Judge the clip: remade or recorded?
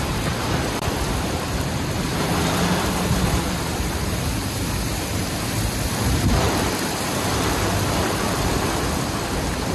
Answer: remade